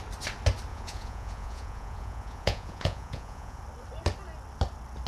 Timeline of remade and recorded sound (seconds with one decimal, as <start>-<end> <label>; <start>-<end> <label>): 0.0-0.7 recorded; 0.7-3.6 remade; 3.6-5.1 recorded